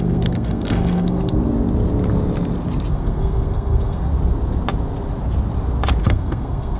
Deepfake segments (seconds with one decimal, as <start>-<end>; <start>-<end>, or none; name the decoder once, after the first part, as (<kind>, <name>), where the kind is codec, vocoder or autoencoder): 0.0-1.4 (codec, SNAC); 2.9-4.1; 6.0-6.8